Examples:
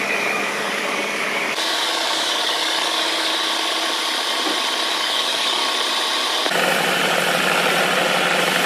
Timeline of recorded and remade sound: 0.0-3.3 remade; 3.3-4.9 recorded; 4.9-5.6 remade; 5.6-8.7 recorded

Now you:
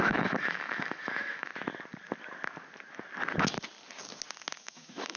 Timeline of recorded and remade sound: 0.0-1.5 remade; 1.5-4.6 recorded; 4.6-5.2 remade

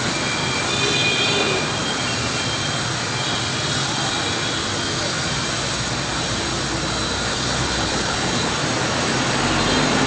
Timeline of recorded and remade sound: 0.0-7.3 recorded; 7.3-8.5 remade; 8.5-10.1 recorded

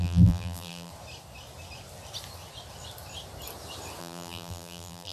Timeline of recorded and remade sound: 0.0-0.9 remade; 0.9-4.0 recorded; 4.0-5.1 remade

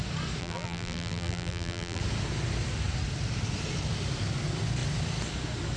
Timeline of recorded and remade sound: 0.0-0.4 recorded; 0.4-2.0 remade; 2.0-5.8 recorded

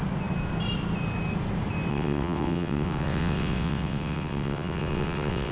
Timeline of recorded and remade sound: 0.0-1.9 recorded; 1.9-5.5 remade